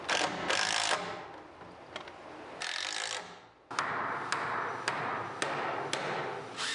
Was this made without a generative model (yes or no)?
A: yes